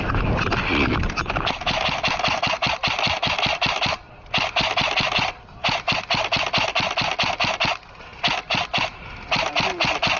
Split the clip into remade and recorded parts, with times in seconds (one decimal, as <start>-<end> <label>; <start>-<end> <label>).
0.0-10.2 recorded